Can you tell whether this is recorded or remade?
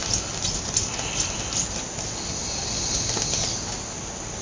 recorded